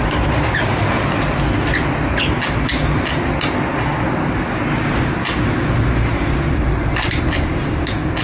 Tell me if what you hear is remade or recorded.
recorded